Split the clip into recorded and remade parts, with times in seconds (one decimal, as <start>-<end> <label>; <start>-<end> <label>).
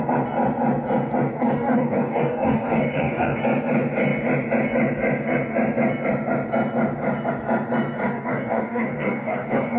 0.0-1.3 recorded; 1.3-3.4 remade; 3.4-8.1 recorded; 8.1-9.8 remade